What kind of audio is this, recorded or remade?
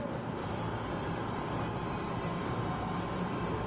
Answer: remade